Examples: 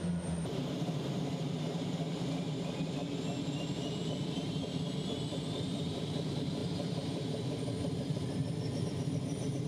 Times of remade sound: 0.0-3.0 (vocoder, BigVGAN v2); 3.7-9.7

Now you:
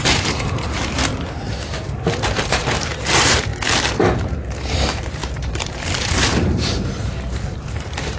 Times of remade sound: 0.0-3.5 (vocoder, BigVGAN v2); 4.2-8.2

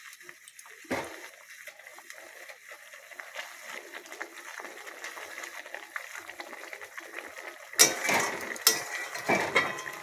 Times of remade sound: 1.9-2.5 (vocoder, BigVGAN v2); 8.7-9.2